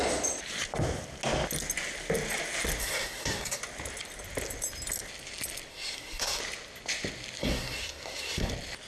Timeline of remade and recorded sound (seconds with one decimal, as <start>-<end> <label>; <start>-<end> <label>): 0.0-2.8 recorded; 2.8-3.6 remade; 3.6-5.7 recorded; 5.7-6.4 remade; 6.4-7.4 recorded; 7.4-8.5 remade; 8.5-8.9 recorded